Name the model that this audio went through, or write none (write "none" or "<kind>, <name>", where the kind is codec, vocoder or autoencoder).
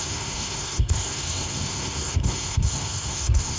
codec, SNAC